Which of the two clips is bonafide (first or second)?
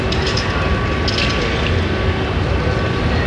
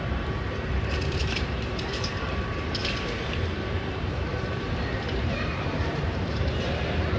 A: first